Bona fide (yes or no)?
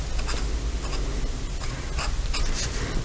yes